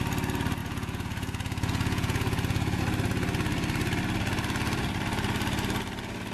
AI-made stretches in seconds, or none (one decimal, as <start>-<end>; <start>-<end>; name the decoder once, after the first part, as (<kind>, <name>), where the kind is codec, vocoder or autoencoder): 0.6-2.8 (vocoder, Vocos)